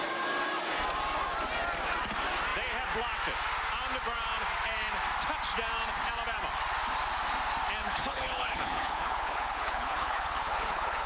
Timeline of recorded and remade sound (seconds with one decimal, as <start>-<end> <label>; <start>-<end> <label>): 0.0-7.8 recorded; 7.8-11.1 remade